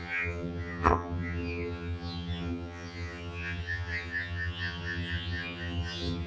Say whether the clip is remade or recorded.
remade